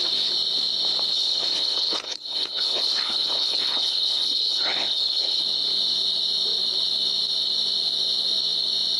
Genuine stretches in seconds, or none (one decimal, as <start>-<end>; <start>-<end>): 0.0-1.1; 5.4-9.0